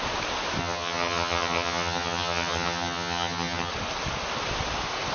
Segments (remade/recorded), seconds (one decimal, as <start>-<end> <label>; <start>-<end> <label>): 0.0-0.6 recorded; 0.6-3.7 remade; 3.7-5.1 recorded